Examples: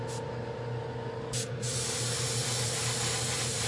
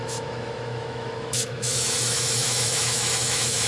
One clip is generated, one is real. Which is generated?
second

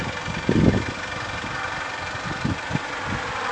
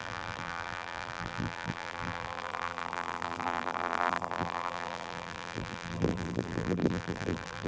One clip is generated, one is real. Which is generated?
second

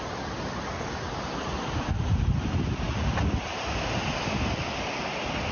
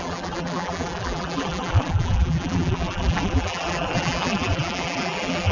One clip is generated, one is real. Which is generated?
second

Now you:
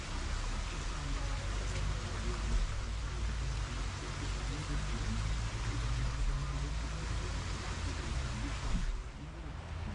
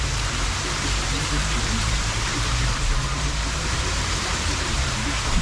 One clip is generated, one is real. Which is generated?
second